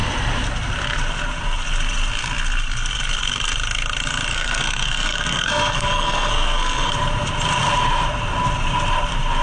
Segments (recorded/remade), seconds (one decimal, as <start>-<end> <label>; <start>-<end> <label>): 0.0-4.3 recorded; 4.3-6.9 remade; 6.9-9.4 recorded